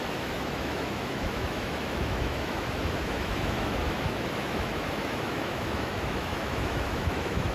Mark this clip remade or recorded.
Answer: remade